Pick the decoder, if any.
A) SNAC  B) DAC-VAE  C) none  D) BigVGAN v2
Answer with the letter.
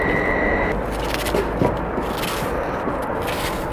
C